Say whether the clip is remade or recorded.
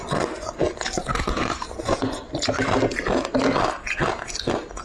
recorded